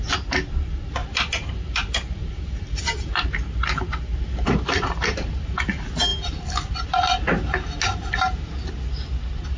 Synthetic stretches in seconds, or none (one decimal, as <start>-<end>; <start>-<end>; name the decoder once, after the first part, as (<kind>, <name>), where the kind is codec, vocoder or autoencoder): 1.0-5.5 (vocoder, BigVGAN v2)